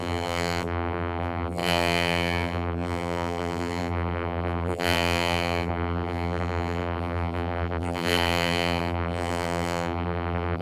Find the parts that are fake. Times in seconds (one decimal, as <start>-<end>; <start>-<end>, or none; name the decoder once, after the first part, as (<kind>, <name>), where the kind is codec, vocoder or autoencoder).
0.0-10.6 (vocoder, BigVGAN v2)